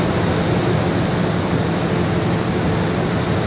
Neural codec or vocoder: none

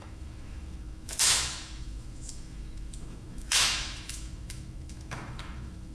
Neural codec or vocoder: autoencoder, DAC-VAE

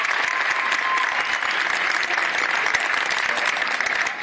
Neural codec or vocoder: none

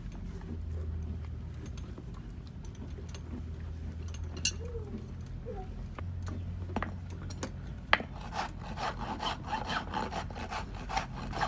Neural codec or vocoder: none